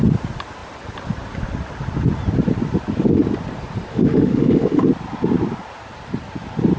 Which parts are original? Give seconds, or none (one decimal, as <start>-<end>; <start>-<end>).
0.0-3.9; 4.8-6.8